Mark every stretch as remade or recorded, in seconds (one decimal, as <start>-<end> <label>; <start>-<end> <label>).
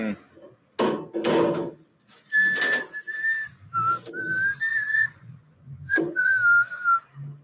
0.0-4.7 recorded; 4.7-6.3 remade; 6.3-7.4 recorded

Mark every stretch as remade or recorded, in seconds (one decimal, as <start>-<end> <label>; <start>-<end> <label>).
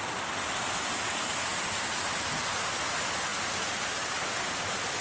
0.0-5.0 recorded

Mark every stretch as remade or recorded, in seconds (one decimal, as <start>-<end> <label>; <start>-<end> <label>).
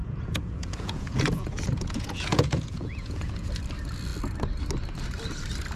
0.0-3.5 remade; 3.5-5.8 recorded